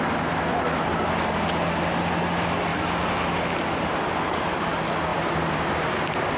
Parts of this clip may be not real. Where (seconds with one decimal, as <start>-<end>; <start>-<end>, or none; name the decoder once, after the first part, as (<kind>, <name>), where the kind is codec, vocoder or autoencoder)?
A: 5.1-5.9 (vocoder, BigVGAN v2)